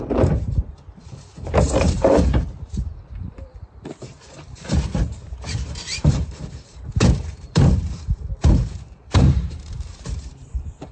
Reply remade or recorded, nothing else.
remade